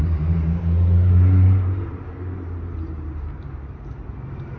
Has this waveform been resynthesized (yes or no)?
no